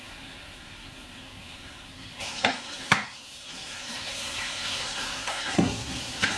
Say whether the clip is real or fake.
fake